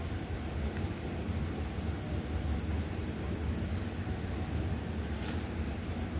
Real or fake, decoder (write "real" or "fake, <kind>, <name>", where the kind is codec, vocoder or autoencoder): real